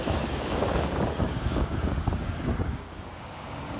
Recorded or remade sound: remade